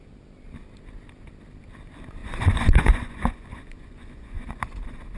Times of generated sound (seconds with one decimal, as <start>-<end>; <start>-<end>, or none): 2.2-4.6